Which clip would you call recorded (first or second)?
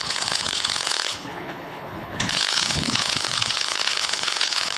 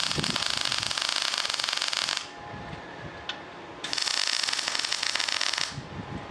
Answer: second